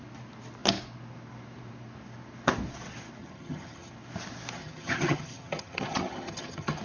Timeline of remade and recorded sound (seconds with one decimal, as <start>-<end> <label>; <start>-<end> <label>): 0.0-3.2 recorded; 3.2-3.9 remade; 3.9-4.6 recorded; 4.6-6.8 remade